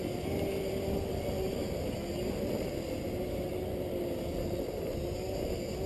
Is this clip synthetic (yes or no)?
no